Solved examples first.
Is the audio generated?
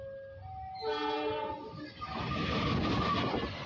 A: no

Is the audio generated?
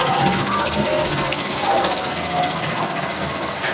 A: yes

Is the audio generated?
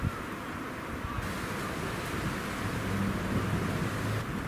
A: no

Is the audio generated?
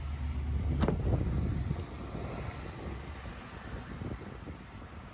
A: no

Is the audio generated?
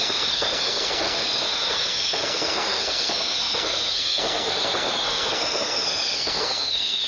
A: yes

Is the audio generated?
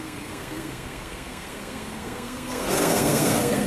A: yes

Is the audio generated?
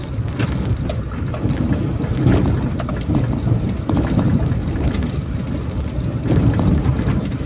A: no